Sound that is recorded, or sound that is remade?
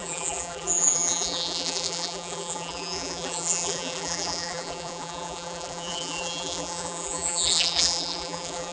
remade